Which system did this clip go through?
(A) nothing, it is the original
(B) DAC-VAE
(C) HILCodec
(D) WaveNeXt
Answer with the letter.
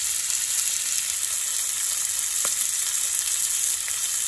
A